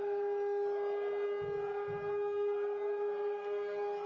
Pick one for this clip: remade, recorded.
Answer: recorded